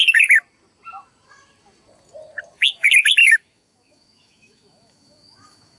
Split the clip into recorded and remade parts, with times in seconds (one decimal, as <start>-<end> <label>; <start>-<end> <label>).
0.0-3.2 recorded; 3.2-5.8 remade